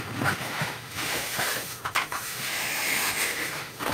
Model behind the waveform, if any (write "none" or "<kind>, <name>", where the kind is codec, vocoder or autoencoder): autoencoder, DAC-VAE